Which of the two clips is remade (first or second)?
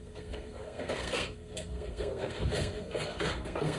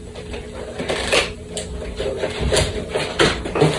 first